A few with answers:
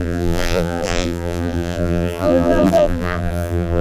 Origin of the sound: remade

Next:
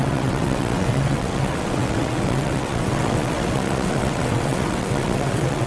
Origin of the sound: remade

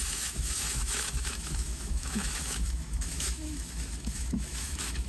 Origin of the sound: remade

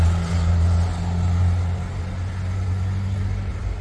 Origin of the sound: recorded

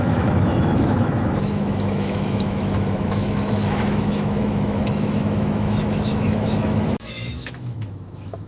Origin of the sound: remade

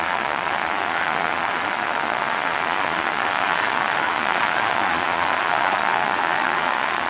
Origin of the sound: remade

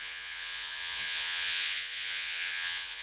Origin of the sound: remade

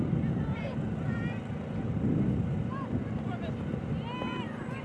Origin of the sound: recorded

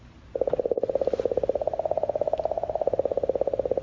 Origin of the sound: recorded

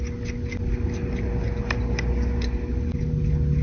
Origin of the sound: recorded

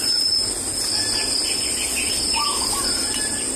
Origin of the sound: recorded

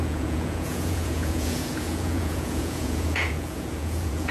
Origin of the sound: remade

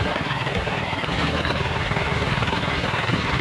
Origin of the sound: remade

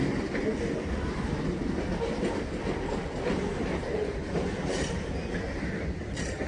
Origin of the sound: recorded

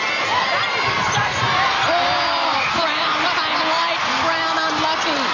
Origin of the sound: recorded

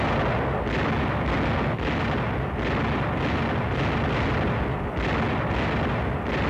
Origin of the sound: recorded